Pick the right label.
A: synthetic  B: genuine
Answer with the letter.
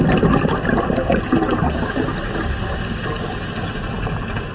B